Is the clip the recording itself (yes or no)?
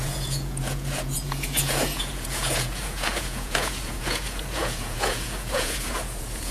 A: no